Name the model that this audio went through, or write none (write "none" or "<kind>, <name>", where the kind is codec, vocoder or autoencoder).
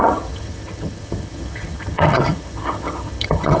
vocoder, HiFi-GAN